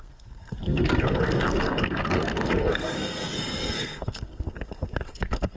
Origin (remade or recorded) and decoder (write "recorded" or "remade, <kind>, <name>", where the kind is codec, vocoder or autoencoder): remade, codec, SNAC